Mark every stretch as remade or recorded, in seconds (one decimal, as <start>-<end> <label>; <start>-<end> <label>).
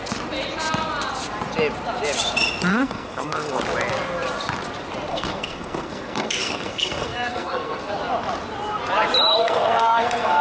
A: 0.0-2.7 recorded; 2.7-3.6 remade; 3.6-5.1 recorded; 5.1-7.9 remade; 7.9-9.4 recorded; 9.4-10.4 remade